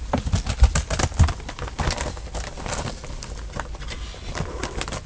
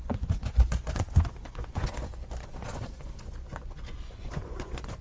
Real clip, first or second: first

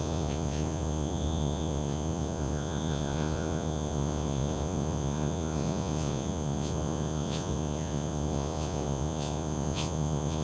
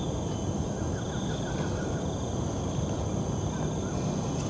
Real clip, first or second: second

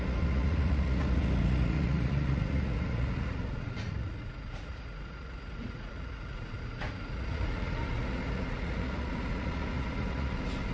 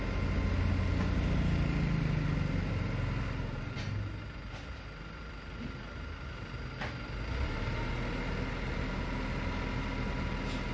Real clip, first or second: second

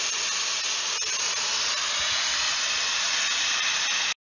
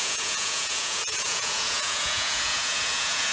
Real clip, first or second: first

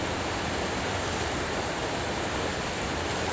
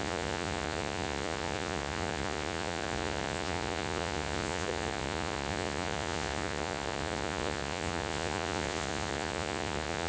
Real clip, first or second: first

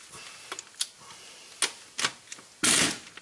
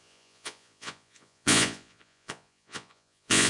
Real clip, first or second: first